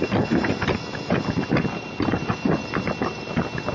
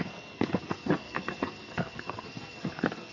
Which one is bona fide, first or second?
first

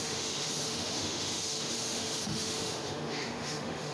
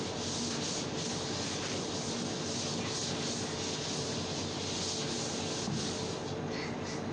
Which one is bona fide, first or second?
second